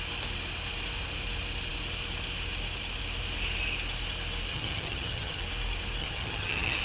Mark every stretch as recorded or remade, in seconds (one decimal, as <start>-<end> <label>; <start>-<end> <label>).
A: 0.0-4.5 recorded; 4.5-5.4 remade; 5.4-6.0 recorded; 6.0-6.8 remade